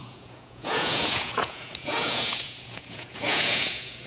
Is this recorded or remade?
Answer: remade